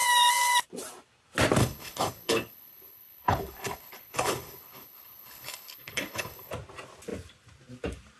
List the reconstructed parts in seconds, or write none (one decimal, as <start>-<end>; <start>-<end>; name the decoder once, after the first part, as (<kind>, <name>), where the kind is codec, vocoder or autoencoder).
1.6-6.5 (codec, HILCodec)